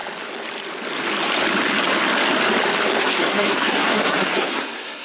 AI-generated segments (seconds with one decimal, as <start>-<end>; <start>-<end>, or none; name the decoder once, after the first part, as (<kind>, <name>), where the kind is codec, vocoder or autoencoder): 3.0-5.0 (codec, SNAC)